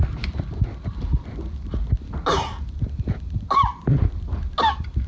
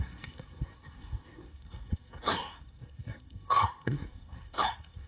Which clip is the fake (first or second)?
second